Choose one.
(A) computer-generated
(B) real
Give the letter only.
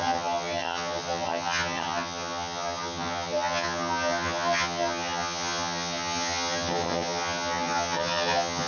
A